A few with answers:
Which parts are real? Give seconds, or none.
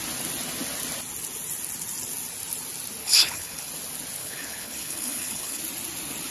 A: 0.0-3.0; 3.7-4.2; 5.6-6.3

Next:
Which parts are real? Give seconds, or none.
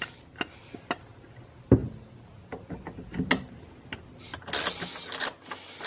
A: 0.0-5.9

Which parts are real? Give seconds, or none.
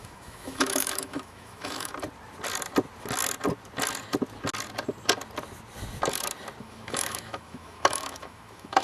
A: 1.9-6.6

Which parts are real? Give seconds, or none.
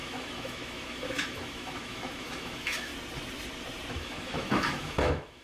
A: 2.9-3.9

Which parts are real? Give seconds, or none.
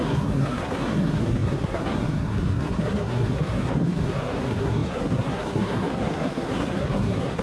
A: none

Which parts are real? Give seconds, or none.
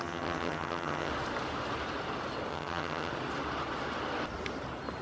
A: 1.1-2.5; 3.1-5.0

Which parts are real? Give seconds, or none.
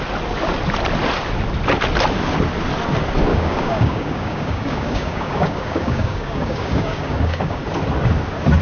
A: 0.0-3.3; 7.6-8.6